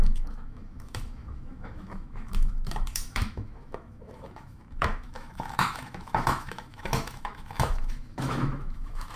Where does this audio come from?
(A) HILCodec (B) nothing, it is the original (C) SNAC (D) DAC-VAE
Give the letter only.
D